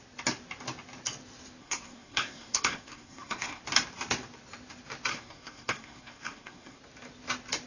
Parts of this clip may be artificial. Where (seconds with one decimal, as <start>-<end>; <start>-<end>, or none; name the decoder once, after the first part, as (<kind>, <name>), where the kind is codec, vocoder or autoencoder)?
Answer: 1.6-3.6 (codec, SNAC); 5.1-6.8